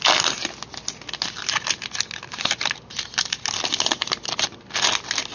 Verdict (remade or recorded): recorded